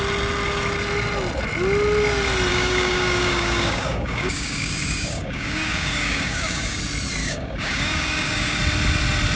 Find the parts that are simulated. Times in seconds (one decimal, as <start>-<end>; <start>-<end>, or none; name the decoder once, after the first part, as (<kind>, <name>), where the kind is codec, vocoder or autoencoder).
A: 2.5-6.8 (codec, DAC); 7.2-8.6